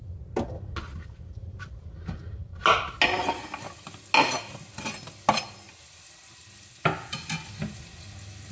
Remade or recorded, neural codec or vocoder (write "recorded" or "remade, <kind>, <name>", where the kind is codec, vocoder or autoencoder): recorded